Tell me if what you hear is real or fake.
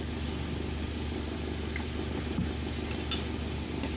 real